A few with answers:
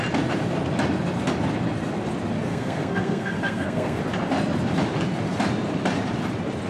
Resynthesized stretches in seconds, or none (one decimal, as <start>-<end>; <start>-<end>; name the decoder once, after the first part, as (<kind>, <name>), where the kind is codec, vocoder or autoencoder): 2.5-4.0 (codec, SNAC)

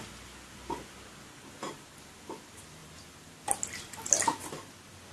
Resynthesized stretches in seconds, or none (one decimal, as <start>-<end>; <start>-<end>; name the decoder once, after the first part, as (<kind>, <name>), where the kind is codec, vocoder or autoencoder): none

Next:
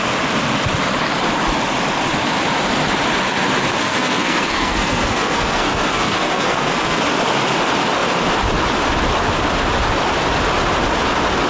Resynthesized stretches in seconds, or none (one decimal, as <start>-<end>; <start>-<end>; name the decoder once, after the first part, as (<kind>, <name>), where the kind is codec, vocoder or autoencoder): 3.8-7.0 (codec, SNAC)

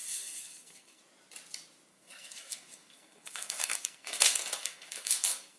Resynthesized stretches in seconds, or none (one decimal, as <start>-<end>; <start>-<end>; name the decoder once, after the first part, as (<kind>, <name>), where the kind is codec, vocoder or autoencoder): 0.0-1.0 (codec, SNAC); 1.9-5.6